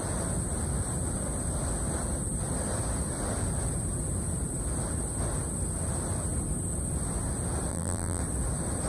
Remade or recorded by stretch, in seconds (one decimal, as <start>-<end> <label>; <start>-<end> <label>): 0.0-7.7 recorded; 7.7-8.2 remade; 8.2-8.9 recorded